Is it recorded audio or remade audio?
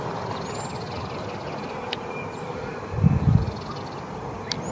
recorded